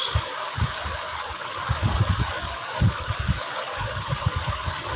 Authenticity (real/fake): fake